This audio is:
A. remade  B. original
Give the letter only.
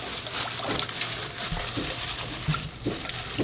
B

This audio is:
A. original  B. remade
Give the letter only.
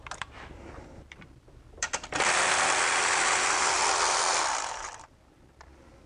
B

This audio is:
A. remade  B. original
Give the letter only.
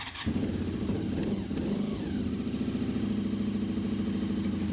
B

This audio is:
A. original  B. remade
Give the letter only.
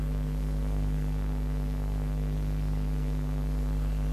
B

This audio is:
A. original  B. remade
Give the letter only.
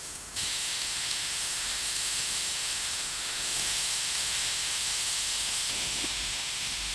B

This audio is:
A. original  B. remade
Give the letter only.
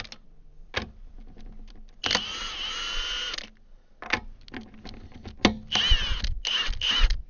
A